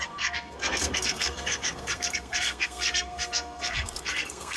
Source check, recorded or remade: remade